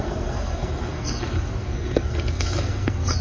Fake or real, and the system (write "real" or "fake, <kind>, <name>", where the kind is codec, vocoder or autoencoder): fake, codec, SNAC